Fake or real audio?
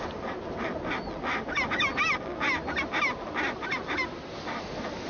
real